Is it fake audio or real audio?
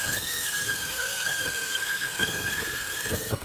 fake